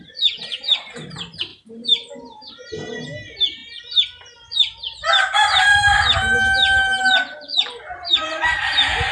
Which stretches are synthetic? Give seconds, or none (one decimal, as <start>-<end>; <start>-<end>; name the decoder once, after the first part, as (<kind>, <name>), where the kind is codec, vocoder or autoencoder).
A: 1.5-2.5 (vocoder, BigVGAN v2)